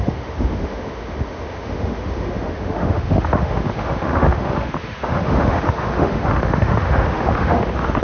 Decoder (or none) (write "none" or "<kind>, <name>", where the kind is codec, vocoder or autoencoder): autoencoder, DAC-VAE